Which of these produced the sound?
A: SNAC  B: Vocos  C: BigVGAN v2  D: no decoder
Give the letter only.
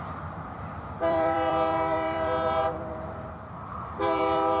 C